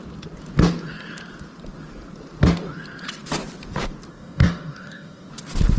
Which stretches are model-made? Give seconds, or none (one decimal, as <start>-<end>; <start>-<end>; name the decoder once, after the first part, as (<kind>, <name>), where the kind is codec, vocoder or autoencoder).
4.1-5.3 (codec, DAC)

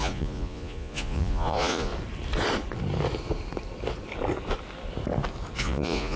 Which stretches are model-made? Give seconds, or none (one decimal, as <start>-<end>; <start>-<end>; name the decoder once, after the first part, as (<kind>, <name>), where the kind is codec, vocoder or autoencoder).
0.0-1.9 (vocoder, Vocos); 5.6-6.2

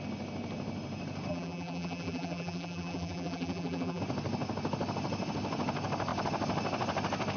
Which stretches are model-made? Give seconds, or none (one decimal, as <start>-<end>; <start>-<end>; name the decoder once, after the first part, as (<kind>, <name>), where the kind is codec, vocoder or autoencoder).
1.3-4.0 (vocoder, BigVGAN v2)

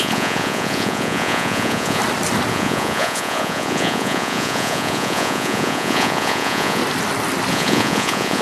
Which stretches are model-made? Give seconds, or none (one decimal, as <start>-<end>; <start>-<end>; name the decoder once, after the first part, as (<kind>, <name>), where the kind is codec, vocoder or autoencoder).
0.0-2.0 (vocoder, Vocos); 2.5-6.8; 7.5-8.4

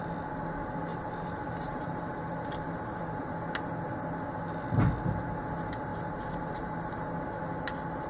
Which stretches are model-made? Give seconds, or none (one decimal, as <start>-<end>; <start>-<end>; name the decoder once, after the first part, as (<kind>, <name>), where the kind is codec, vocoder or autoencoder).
0.9-3.3 (vocoder, BigVGAN v2); 5.9-7.2

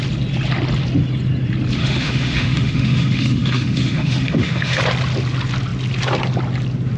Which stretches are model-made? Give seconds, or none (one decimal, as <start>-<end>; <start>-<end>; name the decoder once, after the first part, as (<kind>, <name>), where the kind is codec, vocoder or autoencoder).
1.8-4.8 (autoencoder, DAC-VAE)